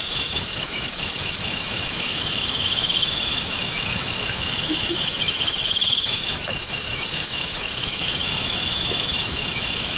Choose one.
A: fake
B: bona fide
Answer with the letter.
A